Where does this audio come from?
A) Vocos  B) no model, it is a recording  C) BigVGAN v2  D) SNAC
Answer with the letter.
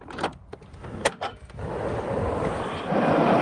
B